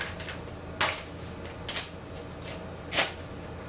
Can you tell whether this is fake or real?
real